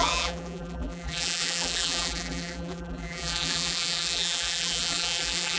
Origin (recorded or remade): remade